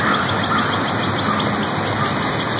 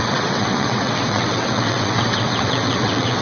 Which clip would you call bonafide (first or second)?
first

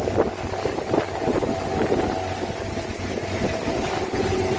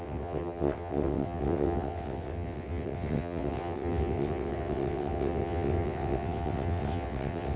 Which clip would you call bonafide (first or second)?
first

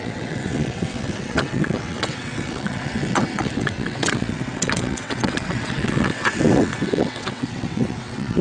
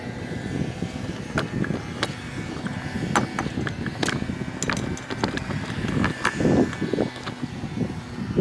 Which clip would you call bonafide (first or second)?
second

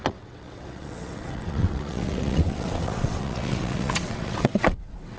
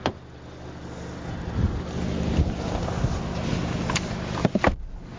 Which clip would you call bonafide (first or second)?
second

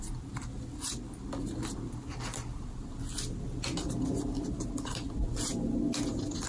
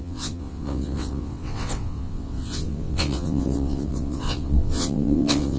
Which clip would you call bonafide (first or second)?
first